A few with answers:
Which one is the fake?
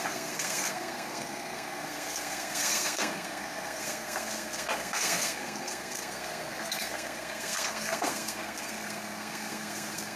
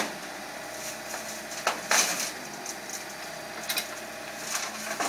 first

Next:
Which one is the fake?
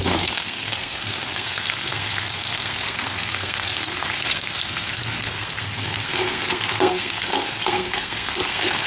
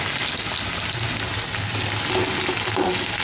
first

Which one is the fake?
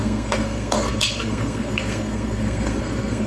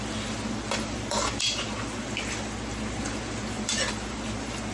first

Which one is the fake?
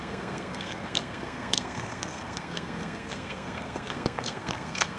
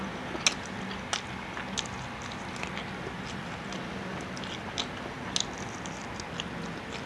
first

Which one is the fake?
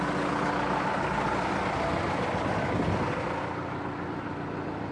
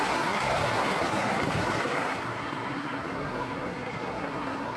second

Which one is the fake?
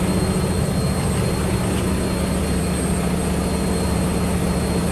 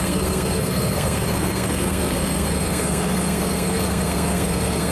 second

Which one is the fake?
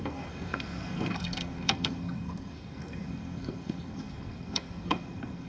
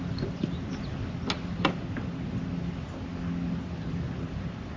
first